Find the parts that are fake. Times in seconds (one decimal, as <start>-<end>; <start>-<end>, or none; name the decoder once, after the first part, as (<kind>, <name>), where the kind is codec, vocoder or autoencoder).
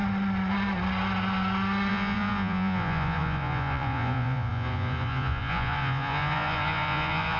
1.9-7.4 (vocoder, Vocos)